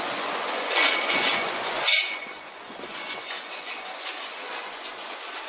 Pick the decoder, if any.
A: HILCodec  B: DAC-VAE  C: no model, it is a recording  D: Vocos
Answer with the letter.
D